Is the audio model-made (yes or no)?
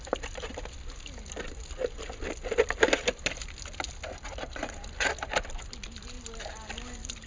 no